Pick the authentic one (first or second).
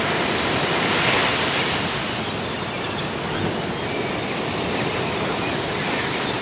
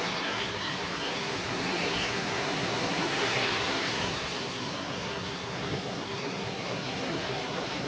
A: first